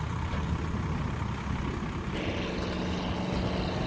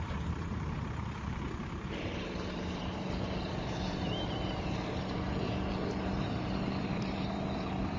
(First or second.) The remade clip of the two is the second